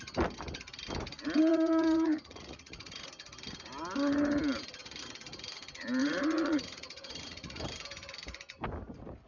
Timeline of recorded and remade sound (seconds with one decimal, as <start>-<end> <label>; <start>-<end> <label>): 0.0-1.5 recorded; 1.5-3.1 remade; 3.1-6.0 recorded; 6.0-7.6 remade; 7.6-9.3 recorded